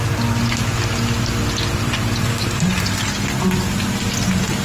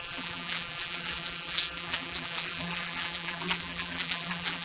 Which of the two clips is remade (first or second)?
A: second